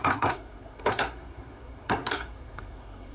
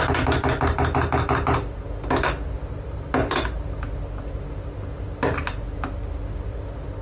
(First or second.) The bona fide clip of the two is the second